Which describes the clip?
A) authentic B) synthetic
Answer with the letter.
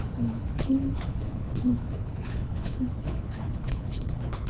B